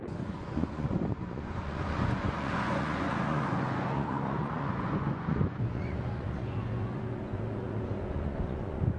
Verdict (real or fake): fake